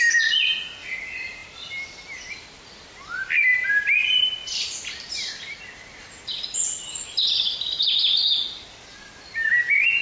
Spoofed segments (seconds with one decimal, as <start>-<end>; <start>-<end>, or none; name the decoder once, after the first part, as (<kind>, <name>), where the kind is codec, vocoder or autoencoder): none